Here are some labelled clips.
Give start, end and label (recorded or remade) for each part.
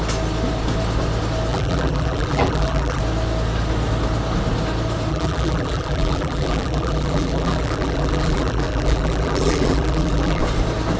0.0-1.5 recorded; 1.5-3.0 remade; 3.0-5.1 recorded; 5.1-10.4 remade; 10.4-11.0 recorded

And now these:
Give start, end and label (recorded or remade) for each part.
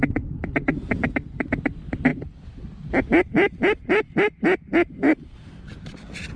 0.0-2.1 recorded; 2.1-2.9 remade; 2.9-5.1 recorded; 5.1-6.0 remade; 6.0-6.4 recorded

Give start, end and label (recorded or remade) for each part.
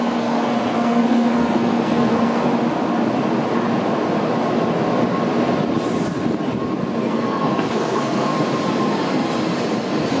0.0-2.5 remade; 2.5-7.0 recorded; 7.0-8.3 remade; 8.3-10.2 recorded